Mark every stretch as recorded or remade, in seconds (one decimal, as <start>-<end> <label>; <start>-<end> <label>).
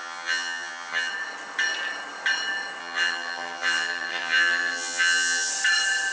0.0-1.1 remade; 1.1-2.8 recorded; 2.8-5.5 remade; 5.5-6.1 recorded